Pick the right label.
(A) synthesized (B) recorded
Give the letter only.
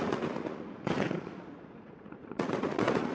A